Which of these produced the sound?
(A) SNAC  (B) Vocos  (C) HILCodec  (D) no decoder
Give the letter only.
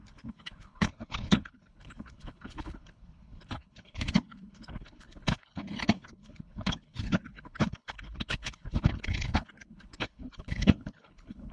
C